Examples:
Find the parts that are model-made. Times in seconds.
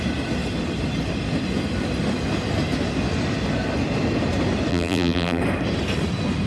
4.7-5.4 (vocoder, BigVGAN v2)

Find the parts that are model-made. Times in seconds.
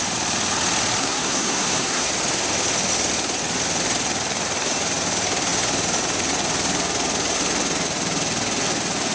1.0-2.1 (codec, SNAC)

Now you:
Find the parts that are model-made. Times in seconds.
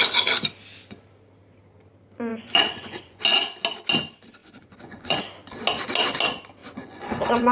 2.3-3.2 (vocoder, Vocos); 4.4-5.2; 6.6-7.5